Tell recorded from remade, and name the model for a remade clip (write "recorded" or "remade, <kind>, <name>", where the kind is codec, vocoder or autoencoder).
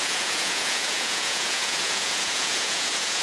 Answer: remade, vocoder, Vocos